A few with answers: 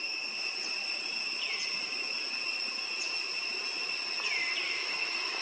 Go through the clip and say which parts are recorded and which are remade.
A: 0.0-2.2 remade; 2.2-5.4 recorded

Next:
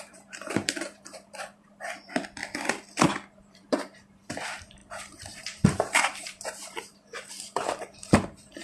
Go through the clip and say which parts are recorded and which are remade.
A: 0.0-2.4 remade; 2.4-3.4 recorded; 3.4-8.6 remade

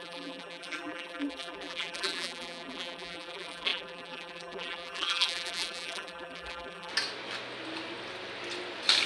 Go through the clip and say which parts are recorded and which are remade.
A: 0.0-6.9 remade; 6.9-9.1 recorded

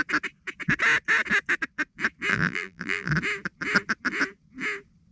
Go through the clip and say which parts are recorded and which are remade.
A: 0.0-2.3 recorded; 2.3-3.1 remade; 3.1-5.1 recorded

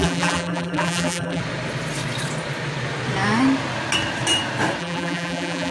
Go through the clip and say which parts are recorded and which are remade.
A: 0.0-1.4 remade; 1.4-4.8 recorded; 4.8-5.7 remade